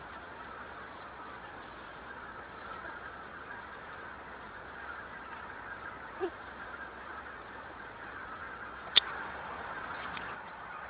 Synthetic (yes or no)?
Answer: yes